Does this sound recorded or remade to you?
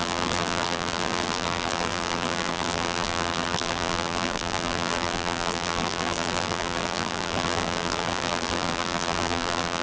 remade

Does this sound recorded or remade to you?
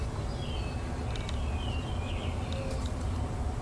recorded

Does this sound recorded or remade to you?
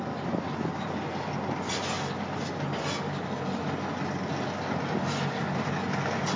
recorded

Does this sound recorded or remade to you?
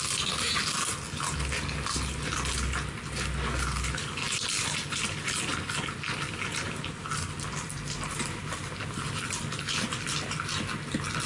recorded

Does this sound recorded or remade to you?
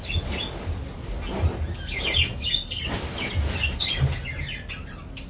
recorded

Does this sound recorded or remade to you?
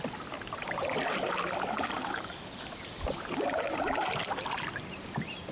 recorded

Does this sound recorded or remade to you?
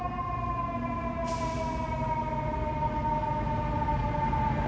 recorded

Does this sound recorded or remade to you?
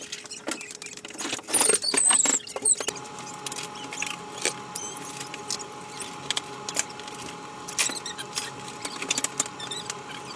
recorded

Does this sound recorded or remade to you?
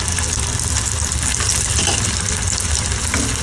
recorded